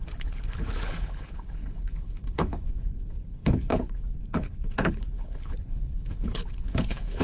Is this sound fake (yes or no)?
yes